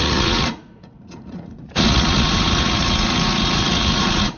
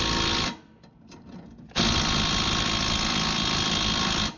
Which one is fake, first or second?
first